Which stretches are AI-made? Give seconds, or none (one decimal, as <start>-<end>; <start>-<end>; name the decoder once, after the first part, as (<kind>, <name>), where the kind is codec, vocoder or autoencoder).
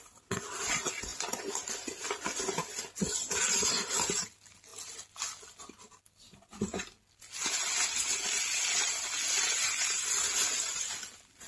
none